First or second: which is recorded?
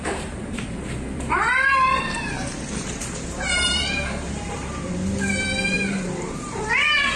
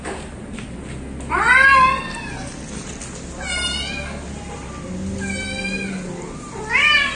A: second